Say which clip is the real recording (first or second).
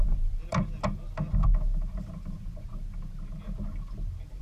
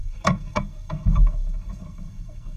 first